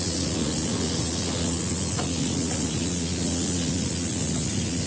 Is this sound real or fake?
fake